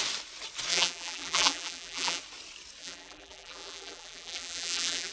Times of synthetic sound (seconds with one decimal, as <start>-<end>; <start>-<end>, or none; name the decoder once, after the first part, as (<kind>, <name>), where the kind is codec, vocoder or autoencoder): 0.7-2.2 (vocoder, BigVGAN v2); 2.8-5.1